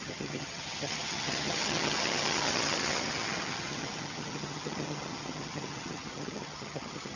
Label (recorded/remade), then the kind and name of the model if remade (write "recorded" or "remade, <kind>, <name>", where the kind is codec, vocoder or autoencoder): remade, vocoder, HiFi-GAN